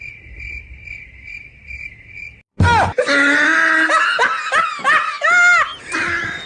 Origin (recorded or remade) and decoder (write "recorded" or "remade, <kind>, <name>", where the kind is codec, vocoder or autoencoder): recorded